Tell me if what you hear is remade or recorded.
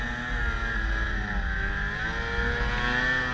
recorded